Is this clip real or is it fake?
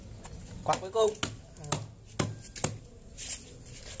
real